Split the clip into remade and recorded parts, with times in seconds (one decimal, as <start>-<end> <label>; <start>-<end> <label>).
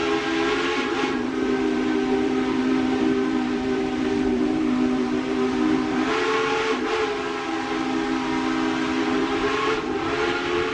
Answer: 0.0-0.5 recorded; 0.5-7.0 remade; 7.0-9.0 recorded; 9.0-10.7 remade